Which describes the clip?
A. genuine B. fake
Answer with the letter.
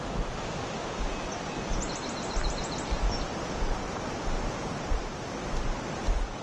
A